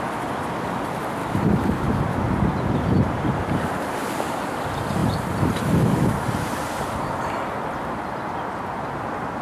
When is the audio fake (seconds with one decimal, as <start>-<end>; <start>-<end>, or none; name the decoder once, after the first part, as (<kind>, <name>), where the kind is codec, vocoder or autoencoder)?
1.2-2.0 (codec, DAC)